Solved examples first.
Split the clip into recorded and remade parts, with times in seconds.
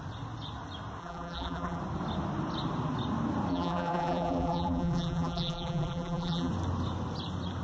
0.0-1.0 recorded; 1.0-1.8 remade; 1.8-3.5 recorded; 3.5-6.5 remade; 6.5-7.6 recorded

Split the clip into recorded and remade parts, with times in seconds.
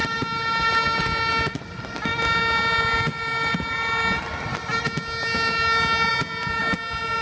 0.0-7.2 recorded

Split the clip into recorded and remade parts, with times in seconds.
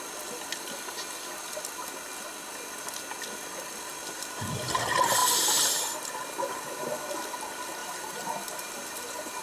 0.0-7.8 recorded; 7.8-9.4 remade